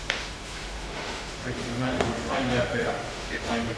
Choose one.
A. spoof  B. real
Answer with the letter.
A